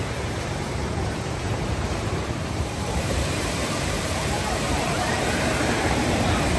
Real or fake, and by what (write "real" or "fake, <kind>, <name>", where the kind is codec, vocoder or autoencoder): fake, vocoder, BigVGAN v2